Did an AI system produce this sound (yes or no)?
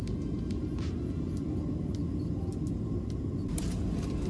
no